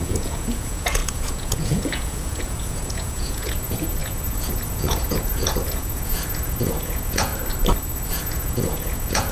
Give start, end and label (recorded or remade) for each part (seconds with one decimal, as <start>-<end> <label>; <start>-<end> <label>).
0.0-7.3 remade; 7.3-8.1 recorded; 8.1-9.3 remade